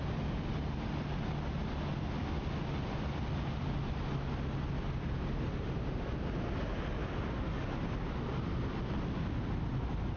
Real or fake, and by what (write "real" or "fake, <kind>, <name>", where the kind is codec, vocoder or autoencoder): real